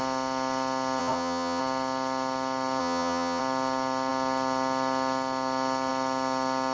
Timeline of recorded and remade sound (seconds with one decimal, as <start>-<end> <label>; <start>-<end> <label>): 0.0-1.0 recorded; 1.0-1.6 remade; 1.6-2.8 recorded; 2.8-3.4 remade; 3.4-6.7 recorded